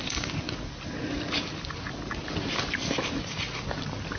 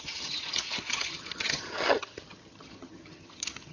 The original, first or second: first